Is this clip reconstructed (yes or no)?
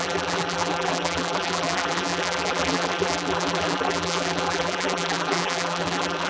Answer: yes